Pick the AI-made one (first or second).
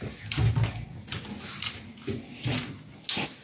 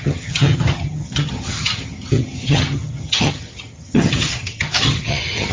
second